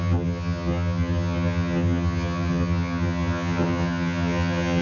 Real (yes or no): no